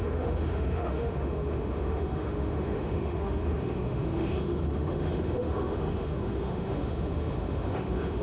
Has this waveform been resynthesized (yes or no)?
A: yes